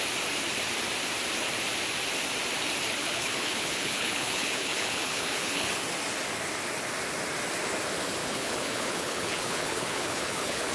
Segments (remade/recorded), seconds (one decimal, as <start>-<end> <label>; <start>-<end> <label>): 0.0-3.0 recorded; 3.0-5.7 remade; 5.7-8.2 recorded; 8.2-10.7 remade